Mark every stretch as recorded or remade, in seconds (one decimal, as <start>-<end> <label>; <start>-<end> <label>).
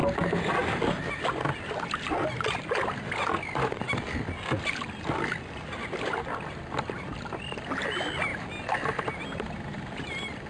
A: 0.0-10.5 recorded